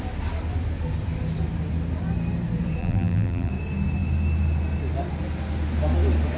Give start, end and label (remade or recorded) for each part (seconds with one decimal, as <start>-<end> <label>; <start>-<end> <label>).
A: 0.0-2.8 recorded; 2.8-3.5 remade; 3.5-6.4 recorded